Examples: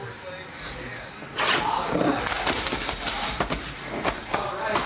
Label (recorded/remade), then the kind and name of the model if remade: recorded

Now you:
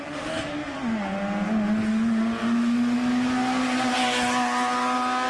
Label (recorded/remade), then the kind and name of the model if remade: recorded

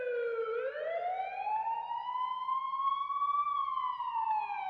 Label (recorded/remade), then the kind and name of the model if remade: recorded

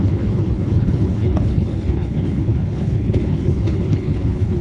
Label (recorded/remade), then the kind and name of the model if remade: remade, codec, HILCodec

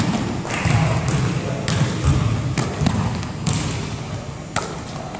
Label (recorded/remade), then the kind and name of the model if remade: recorded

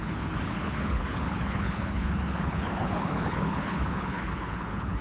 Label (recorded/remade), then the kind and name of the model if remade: remade, codec, HILCodec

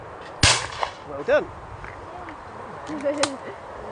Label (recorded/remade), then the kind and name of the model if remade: recorded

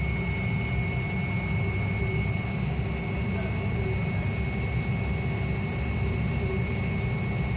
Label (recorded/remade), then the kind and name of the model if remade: recorded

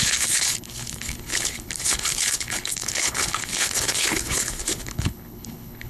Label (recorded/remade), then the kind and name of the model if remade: remade, codec, HILCodec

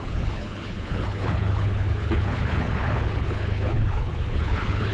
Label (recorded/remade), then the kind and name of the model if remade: remade, codec, HILCodec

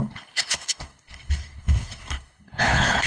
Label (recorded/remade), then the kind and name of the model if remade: remade, codec, HILCodec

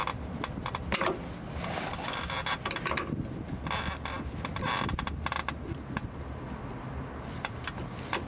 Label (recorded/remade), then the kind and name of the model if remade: recorded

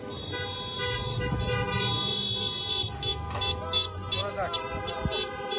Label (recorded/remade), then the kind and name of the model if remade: recorded